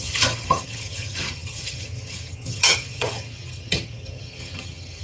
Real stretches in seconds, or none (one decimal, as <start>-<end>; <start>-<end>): none

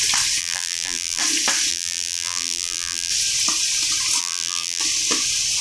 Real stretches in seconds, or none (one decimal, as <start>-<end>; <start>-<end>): 0.0-0.4; 1.2-1.7; 3.1-4.2; 4.8-5.6

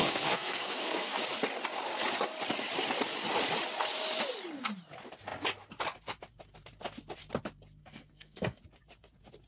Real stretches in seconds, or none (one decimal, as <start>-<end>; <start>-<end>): 1.2-7.8; 8.6-9.5

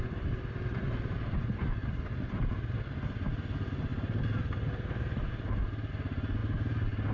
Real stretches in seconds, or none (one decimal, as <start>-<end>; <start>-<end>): 0.0-7.1